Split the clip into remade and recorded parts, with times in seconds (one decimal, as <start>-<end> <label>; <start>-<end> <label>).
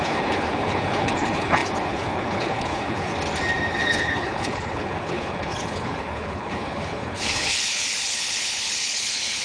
0.0-3.1 remade; 3.1-3.7 recorded; 3.7-9.4 remade